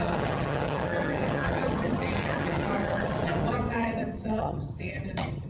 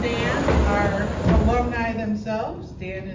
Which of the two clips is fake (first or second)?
first